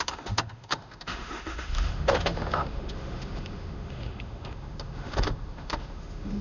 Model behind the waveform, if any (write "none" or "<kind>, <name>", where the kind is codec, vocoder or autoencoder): autoencoder, DAC-VAE